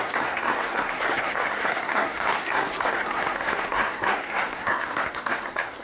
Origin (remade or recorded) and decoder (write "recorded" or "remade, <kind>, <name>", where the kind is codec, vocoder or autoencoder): remade, codec, SNAC